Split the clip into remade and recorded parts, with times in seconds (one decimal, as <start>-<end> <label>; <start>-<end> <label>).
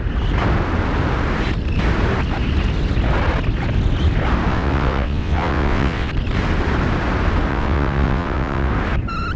0.0-4.5 recorded; 4.5-6.1 remade; 6.1-7.5 recorded; 7.5-8.7 remade; 8.7-9.4 recorded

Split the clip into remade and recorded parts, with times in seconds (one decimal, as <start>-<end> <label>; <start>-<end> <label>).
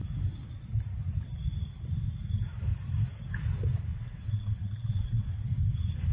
0.0-3.9 recorded; 3.9-5.4 remade; 5.4-6.1 recorded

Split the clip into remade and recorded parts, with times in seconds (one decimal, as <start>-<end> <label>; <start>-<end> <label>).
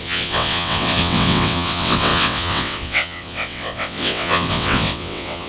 0.0-5.5 remade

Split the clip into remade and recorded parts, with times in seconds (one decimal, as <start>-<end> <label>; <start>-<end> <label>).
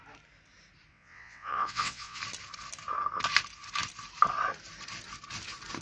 0.0-0.9 recorded; 0.9-2.2 remade; 2.2-5.8 recorded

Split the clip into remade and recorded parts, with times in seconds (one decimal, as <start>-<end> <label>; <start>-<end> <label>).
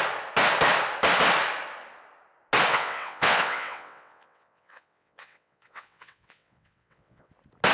0.0-2.7 recorded; 2.7-7.3 remade; 7.3-7.7 recorded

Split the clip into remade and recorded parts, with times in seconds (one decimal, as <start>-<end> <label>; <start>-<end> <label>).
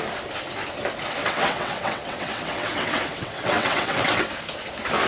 0.0-1.2 recorded; 1.2-4.3 remade; 4.3-5.1 recorded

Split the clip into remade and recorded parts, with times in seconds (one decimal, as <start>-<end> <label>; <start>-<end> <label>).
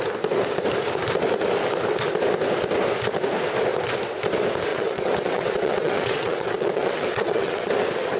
0.0-4.7 recorded; 4.7-7.7 remade; 7.7-8.2 recorded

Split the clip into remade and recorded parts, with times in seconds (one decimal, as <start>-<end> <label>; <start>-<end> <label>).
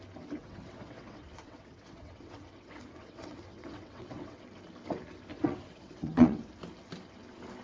0.0-0.4 recorded; 0.4-4.4 remade; 4.4-5.3 recorded; 5.3-6.5 remade; 6.5-7.6 recorded